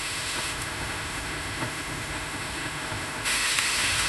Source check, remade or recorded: remade